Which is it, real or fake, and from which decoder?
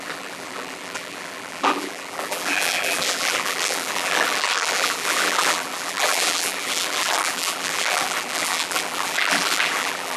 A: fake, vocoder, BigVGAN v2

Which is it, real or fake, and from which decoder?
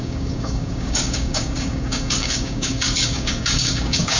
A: fake, codec, DAC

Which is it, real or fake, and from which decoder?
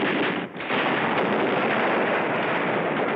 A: real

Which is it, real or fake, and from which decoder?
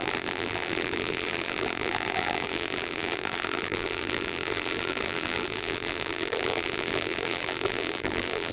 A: fake, vocoder, BigVGAN v2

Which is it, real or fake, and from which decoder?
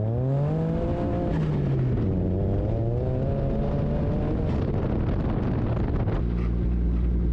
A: real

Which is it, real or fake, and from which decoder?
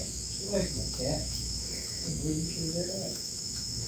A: fake, autoencoder, DAC-VAE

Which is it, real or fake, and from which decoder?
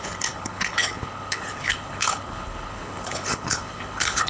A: fake, codec, HILCodec